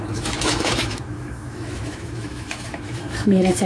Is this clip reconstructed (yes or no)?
yes